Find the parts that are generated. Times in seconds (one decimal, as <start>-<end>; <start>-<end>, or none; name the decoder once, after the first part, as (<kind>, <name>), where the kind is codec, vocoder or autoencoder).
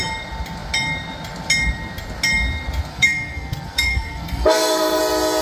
2.9-5.0 (codec, SNAC)